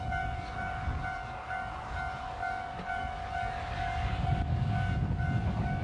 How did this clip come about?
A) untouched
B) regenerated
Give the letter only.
B